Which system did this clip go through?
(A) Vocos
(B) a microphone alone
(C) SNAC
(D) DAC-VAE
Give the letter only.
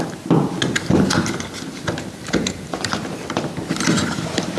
B